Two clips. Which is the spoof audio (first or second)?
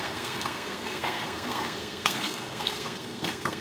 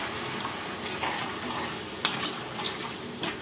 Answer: first